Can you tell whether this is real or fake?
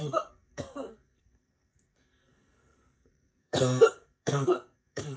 fake